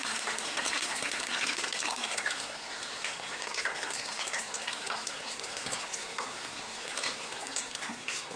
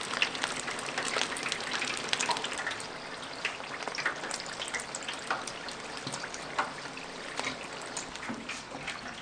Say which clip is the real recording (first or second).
second